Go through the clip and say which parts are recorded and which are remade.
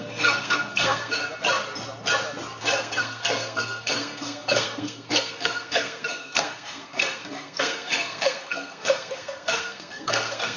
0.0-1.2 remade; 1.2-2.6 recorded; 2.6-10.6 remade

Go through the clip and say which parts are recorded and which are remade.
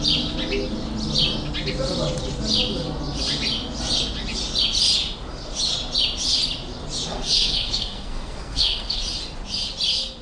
0.0-7.1 recorded; 7.1-9.0 remade; 9.0-10.2 recorded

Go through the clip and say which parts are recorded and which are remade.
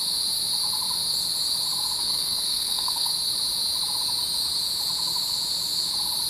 0.0-2.0 recorded; 2.0-3.1 remade; 3.1-6.3 recorded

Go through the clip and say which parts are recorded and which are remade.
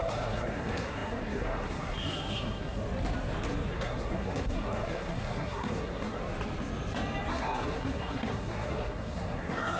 0.0-2.8 remade; 2.8-3.7 recorded; 3.7-6.2 remade; 6.2-7.3 recorded; 7.3-9.8 remade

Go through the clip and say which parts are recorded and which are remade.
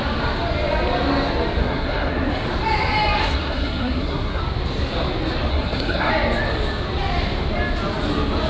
0.0-1.6 recorded; 1.6-2.3 remade; 2.3-3.2 recorded; 3.2-4.4 remade; 4.4-5.5 recorded; 5.5-6.1 remade; 6.1-8.5 recorded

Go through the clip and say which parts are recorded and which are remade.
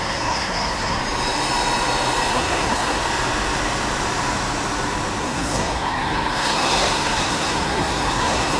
0.0-1.0 remade; 1.0-2.3 recorded; 2.3-3.0 remade; 3.0-5.2 recorded; 5.2-8.6 remade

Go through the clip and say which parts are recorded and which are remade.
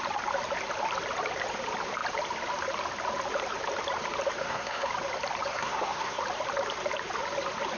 0.0-4.4 recorded; 4.4-4.9 remade; 4.9-5.5 recorded; 5.5-6.2 remade; 6.2-7.8 recorded